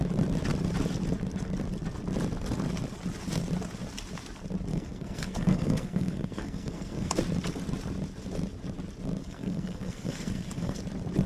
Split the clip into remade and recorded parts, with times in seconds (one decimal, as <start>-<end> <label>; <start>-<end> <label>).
0.0-4.7 recorded; 4.7-7.1 remade; 7.1-9.2 recorded; 9.2-10.8 remade; 10.8-11.3 recorded